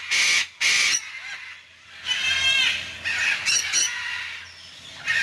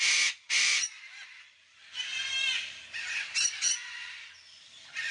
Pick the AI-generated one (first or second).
second